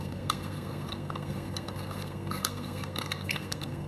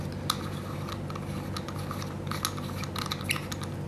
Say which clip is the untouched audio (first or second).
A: second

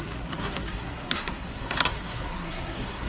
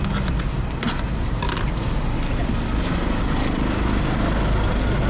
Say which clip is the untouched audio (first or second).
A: second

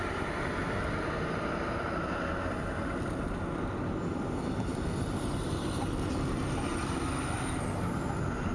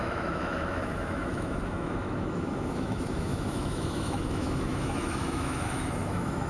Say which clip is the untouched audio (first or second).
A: first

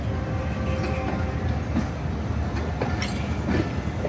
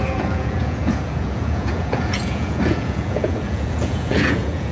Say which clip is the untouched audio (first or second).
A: first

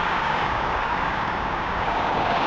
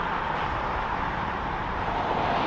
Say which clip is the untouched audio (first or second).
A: second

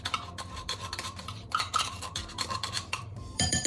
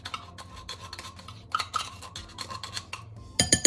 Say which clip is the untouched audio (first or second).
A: second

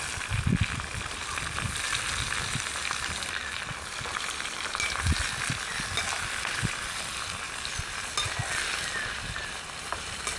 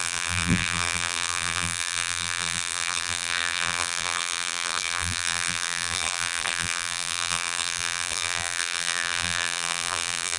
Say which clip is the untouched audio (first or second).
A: first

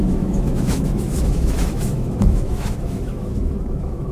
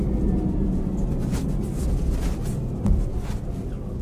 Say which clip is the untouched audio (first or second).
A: second